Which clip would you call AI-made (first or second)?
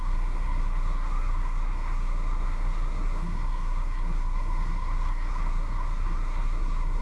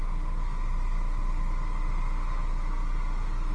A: first